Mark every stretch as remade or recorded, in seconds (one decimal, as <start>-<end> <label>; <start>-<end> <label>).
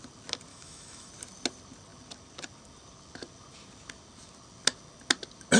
0.0-0.5 recorded; 0.5-1.1 remade; 1.1-5.6 recorded